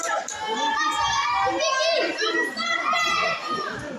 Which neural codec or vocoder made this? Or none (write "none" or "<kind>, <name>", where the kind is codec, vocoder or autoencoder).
none